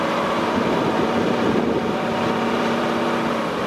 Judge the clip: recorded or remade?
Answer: remade